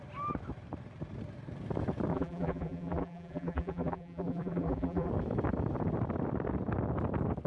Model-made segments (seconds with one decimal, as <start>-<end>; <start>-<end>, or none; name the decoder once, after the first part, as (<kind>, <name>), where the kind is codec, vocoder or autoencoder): 2.1-5.1 (vocoder, BigVGAN v2)